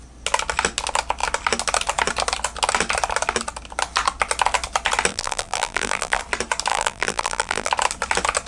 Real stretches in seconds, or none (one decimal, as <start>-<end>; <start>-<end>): 0.0-5.1; 6.2-6.7; 7.7-8.5